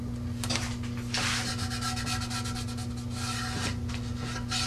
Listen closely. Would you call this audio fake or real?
real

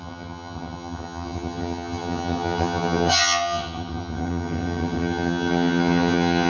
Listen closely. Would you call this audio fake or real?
fake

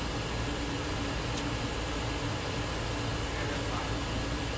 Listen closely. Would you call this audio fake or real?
real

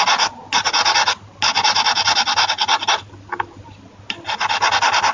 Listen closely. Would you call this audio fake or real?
real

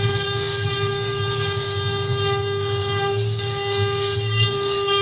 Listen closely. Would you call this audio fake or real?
fake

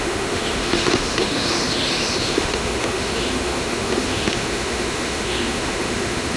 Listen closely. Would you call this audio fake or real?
fake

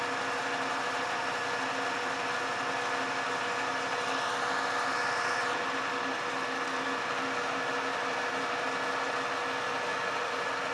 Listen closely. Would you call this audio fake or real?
real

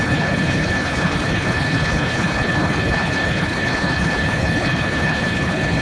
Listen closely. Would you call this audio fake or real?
fake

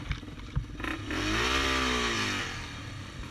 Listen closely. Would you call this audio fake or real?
real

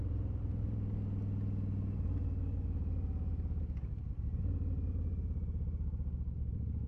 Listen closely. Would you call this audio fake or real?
real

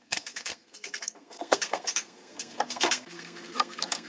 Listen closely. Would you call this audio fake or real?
fake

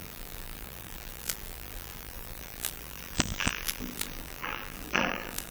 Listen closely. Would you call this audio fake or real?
fake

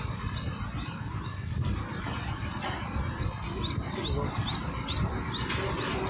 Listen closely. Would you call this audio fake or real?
real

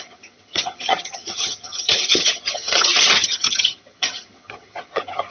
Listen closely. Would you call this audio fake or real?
fake